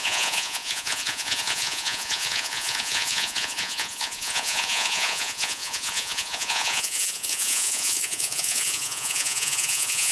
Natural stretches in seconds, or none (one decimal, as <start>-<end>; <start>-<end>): none